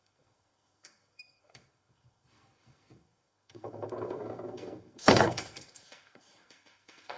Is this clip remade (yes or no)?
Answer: yes